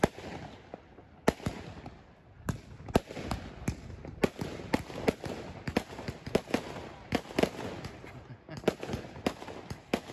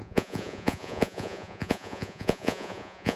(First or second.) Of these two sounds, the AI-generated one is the second